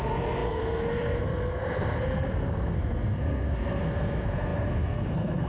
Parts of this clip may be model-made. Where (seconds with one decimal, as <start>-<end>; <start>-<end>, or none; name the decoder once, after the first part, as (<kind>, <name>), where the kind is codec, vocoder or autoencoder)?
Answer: 0.0-5.5 (codec, SNAC)